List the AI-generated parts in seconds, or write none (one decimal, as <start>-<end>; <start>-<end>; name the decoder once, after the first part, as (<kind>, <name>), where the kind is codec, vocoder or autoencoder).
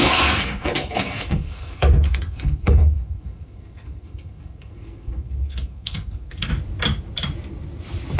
0.0-6.5 (codec, SNAC)